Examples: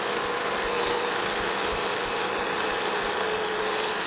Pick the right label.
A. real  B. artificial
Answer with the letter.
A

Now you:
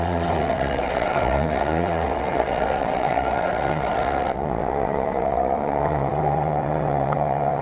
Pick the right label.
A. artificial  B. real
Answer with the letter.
A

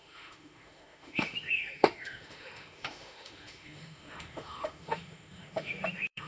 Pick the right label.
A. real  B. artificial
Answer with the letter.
B